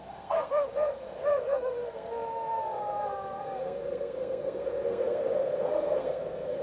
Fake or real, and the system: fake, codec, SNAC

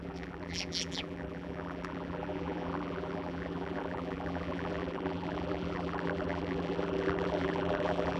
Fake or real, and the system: fake, vocoder, BigVGAN v2